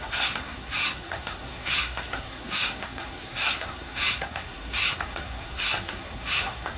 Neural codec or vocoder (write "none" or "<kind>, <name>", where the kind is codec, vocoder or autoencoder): codec, SNAC